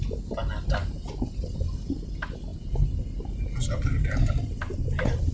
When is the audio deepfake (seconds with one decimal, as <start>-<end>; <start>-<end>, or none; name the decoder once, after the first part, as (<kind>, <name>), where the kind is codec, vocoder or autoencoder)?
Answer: none